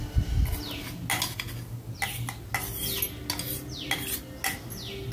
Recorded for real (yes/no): yes